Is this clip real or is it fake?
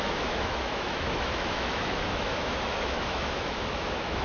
fake